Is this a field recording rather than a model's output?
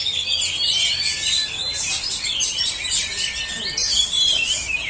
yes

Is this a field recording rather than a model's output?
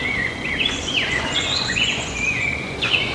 no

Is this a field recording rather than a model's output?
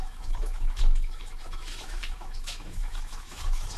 no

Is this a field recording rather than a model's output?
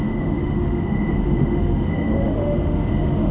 no